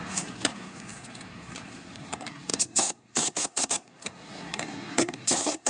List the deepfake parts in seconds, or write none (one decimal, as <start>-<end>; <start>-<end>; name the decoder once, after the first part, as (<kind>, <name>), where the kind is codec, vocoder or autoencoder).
0.0-5.7 (codec, SNAC)